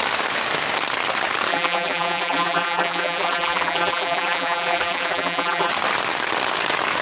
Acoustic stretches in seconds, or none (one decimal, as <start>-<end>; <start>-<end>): 0.0-1.5; 5.7-7.0

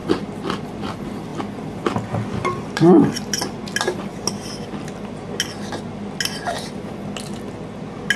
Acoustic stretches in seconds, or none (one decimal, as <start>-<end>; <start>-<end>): 1.3-2.0; 3.6-8.2

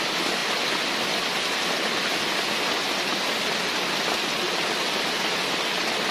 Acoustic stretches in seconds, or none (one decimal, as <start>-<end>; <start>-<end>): 0.0-6.1

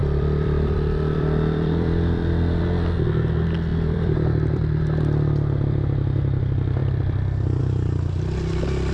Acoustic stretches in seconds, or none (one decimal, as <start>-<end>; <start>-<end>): 2.6-3.7; 4.8-6.8; 7.6-8.9

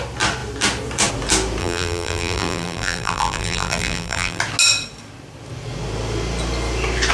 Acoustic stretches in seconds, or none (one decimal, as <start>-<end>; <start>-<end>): 0.0-1.6; 4.4-7.1

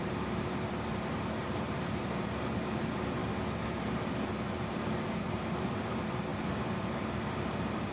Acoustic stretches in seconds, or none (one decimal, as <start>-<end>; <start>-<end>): none